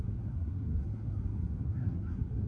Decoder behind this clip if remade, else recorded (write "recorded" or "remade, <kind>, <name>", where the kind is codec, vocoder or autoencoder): remade, codec, SNAC